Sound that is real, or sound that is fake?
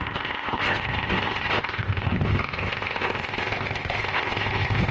fake